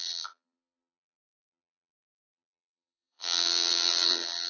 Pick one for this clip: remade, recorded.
remade